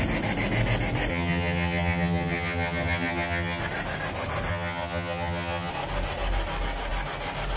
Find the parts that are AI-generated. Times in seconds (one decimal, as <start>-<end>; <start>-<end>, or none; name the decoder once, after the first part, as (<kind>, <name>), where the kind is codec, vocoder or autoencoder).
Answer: 1.1-3.6 (vocoder, HiFi-GAN); 4.5-5.7